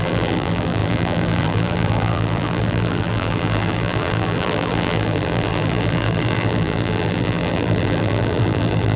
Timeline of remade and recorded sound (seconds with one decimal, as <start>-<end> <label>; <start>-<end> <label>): 0.0-9.0 remade